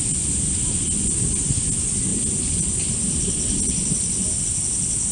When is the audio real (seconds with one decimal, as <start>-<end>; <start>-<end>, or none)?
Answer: 0.0-2.1; 4.4-5.1